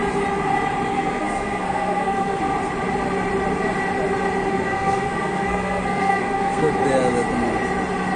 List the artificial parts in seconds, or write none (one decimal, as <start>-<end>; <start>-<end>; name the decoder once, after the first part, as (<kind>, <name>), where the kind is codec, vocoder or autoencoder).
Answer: 0.9-2.4 (codec, SNAC); 4.5-6.7